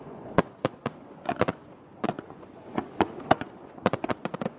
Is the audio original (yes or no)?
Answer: no